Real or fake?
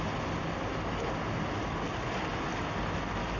real